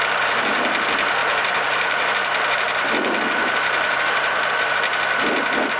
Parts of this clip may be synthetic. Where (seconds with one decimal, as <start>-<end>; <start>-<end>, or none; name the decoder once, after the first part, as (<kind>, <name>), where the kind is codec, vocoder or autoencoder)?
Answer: 1.2-4.7 (vocoder, BigVGAN v2)

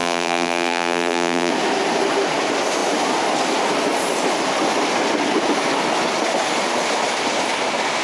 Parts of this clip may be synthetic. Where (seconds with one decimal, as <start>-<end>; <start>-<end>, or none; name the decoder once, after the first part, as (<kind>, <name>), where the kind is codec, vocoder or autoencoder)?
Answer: 0.0-1.5 (vocoder, BigVGAN v2)

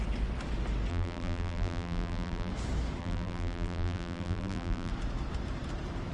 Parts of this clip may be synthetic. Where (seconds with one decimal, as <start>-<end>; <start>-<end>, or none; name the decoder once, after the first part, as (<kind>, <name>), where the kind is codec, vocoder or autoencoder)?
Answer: 0.9-2.5 (vocoder, BigVGAN v2); 3.0-4.9

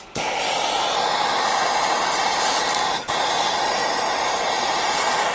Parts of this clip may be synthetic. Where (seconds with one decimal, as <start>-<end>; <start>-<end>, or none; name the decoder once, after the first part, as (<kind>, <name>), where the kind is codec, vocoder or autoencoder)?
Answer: 1.6-4.8 (vocoder, BigVGAN v2)

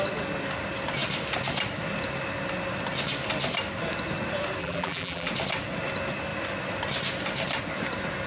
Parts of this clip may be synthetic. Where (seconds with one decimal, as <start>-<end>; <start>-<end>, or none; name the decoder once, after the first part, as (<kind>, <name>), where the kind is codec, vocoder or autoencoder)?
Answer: 4.6-5.3 (vocoder, BigVGAN v2)

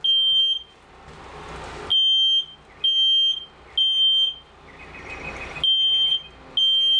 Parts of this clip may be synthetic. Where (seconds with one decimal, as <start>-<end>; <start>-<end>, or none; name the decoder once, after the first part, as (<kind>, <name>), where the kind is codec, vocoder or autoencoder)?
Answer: none

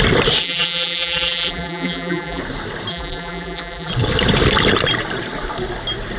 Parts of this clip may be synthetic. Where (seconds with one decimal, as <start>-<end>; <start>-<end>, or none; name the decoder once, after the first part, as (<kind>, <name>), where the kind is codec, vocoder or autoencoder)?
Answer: 0.4-2.4 (vocoder, BigVGAN v2); 2.9-3.9